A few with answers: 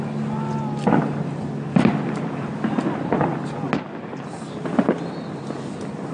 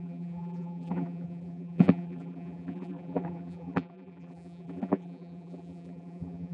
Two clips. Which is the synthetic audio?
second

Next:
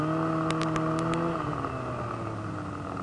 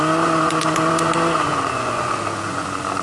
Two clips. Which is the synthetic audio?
second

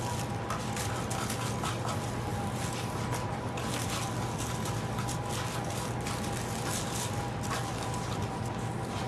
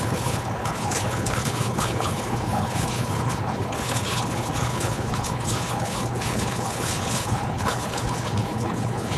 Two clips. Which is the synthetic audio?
second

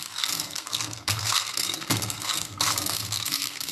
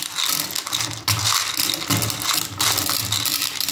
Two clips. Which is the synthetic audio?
first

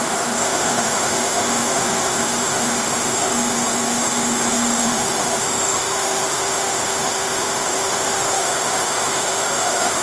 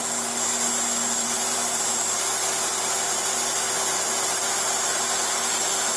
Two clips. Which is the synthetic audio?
first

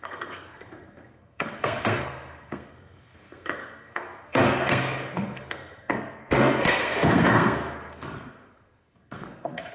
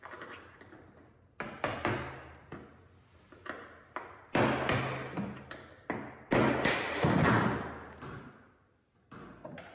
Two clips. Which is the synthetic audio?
first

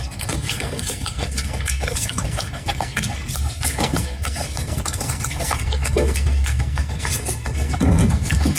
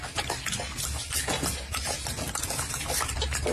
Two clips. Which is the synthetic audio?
first